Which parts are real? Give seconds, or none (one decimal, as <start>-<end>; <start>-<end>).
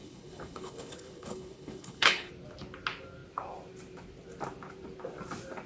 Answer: 2.3-5.7